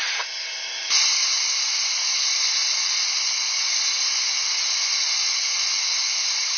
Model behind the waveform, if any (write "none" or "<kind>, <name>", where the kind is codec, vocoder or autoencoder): none